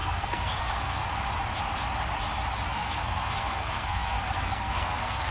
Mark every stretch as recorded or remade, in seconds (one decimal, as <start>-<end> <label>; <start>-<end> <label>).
0.0-1.0 remade; 1.0-2.7 recorded; 2.7-5.3 remade